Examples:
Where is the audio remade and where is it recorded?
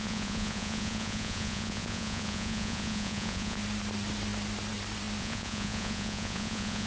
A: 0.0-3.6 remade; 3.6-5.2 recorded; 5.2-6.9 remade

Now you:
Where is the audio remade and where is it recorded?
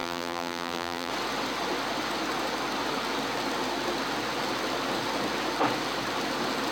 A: 0.0-1.1 remade; 1.1-6.7 recorded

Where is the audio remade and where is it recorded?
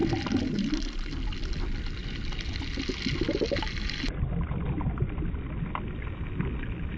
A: 0.0-7.0 recorded